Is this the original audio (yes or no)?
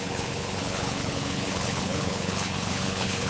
no